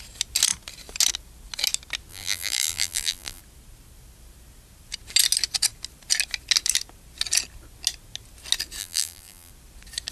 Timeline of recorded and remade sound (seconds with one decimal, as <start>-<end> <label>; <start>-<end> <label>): 0.0-2.1 recorded; 2.1-3.4 remade; 3.4-8.8 recorded; 8.8-9.5 remade; 9.5-10.1 recorded